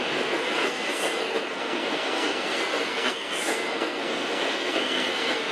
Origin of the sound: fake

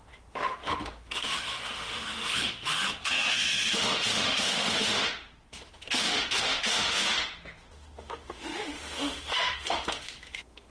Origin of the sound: fake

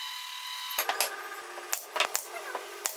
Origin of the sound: real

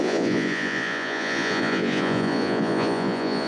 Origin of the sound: fake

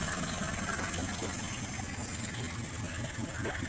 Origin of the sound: real